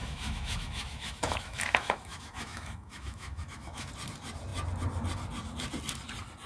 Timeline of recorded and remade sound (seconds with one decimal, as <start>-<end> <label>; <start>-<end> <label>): 0.0-3.9 remade; 3.9-6.5 recorded